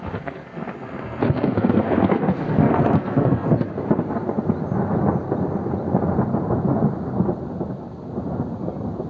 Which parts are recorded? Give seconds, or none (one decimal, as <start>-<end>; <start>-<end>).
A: 3.7-9.1